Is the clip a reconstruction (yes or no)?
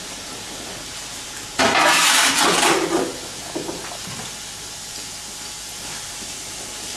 no